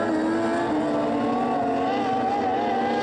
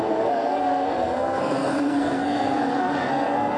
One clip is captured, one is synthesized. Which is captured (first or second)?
first